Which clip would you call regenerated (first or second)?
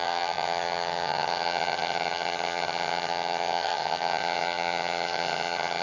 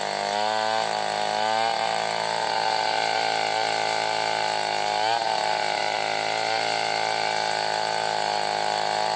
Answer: first